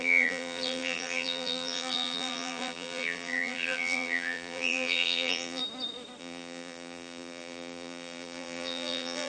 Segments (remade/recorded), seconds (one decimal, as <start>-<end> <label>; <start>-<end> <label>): 0.0-5.6 remade; 5.6-6.2 recorded; 6.2-9.3 remade